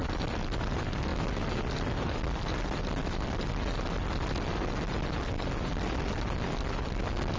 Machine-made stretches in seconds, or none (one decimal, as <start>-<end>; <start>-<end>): none